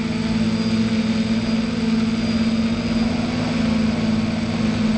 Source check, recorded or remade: recorded